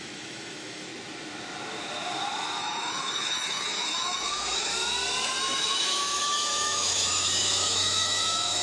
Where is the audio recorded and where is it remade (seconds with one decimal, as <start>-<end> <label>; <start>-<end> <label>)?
0.0-0.9 remade; 0.9-2.6 recorded; 2.6-4.7 remade; 4.7-5.4 recorded; 5.4-8.6 remade